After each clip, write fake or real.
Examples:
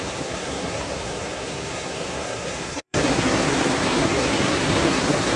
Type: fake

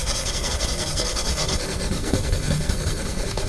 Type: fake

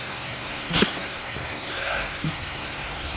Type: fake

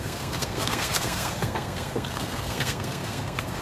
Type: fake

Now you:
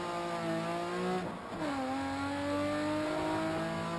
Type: real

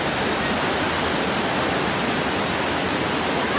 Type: real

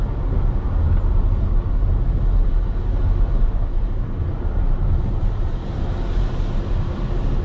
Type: real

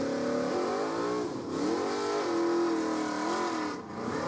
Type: real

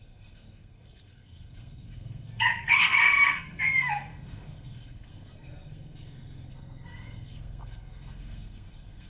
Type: fake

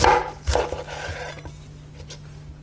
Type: real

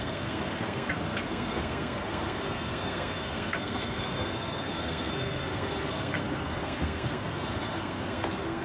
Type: fake